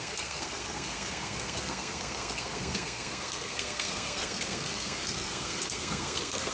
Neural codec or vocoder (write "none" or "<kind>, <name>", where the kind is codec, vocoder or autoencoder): codec, SNAC